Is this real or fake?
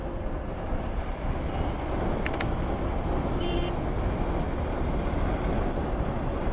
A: real